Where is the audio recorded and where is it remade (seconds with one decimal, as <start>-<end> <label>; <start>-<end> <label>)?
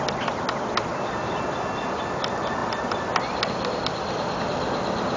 0.0-5.2 recorded